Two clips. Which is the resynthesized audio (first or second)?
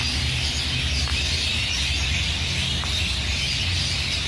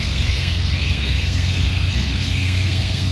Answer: second